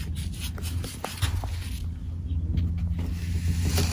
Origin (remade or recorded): recorded